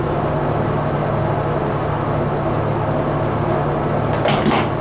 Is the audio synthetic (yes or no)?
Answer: no